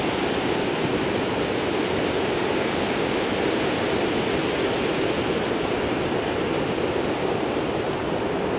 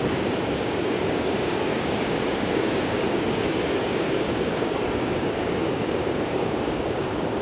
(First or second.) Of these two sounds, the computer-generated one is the second